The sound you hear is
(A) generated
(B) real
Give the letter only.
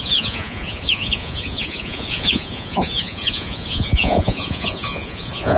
A